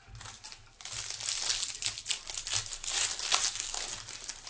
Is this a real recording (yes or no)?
yes